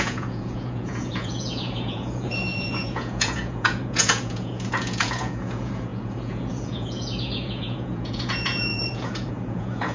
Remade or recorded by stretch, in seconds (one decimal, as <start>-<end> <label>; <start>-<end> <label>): 0.0-9.9 remade

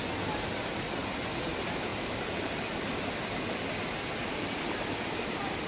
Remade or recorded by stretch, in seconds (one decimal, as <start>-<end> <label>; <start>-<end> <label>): 0.0-1.9 recorded; 1.9-2.8 remade; 2.8-5.7 recorded